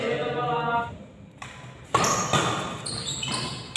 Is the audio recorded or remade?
recorded